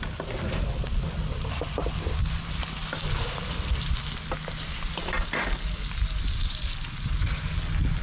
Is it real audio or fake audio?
real